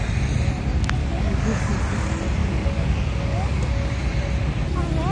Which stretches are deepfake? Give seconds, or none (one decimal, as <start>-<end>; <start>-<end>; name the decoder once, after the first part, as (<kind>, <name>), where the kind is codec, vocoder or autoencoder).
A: 1.0-1.7 (codec, DAC); 2.4-4.0